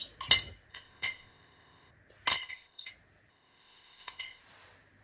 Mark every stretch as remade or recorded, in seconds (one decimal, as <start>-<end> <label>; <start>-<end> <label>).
0.0-0.7 recorded; 0.7-1.9 remade; 1.9-2.3 recorded; 2.3-2.9 remade; 2.9-3.3 recorded; 3.3-4.4 remade; 4.4-5.0 recorded